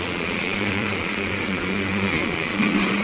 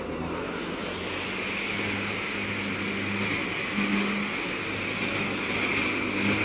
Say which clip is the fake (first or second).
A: first